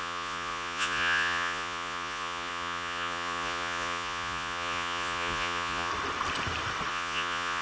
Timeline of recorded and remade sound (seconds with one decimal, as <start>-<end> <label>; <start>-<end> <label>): 0.0-5.9 remade; 5.9-6.9 recorded; 6.9-7.6 remade